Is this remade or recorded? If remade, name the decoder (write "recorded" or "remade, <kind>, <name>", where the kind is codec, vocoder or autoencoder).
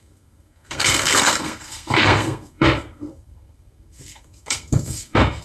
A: remade, codec, SNAC